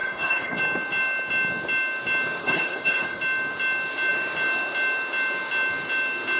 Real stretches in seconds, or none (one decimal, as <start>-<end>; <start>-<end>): 0.6-2.4; 3.2-6.4